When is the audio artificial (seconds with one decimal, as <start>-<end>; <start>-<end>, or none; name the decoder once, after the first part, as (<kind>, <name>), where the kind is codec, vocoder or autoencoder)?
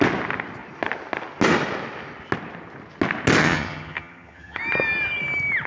3.4-4.6 (vocoder, HiFi-GAN)